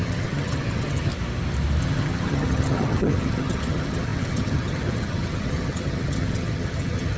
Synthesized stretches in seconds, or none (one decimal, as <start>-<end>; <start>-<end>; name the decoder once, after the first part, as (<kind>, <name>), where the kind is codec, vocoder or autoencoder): 0.0-1.1 (vocoder, HiFi-GAN); 1.8-7.2